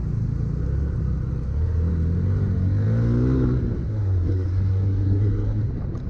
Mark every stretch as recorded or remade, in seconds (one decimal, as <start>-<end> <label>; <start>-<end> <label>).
0.0-3.9 recorded; 3.9-5.6 remade; 5.6-6.1 recorded